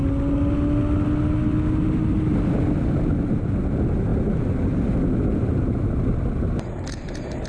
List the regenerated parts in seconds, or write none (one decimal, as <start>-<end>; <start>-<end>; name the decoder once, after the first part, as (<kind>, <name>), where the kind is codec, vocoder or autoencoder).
none